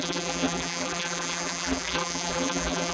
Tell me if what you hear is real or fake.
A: fake